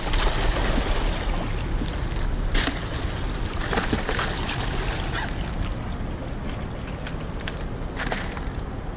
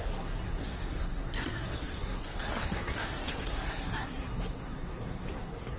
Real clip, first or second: first